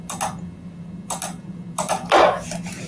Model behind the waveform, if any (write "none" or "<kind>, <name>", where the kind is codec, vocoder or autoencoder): none